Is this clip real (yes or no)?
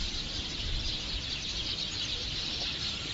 yes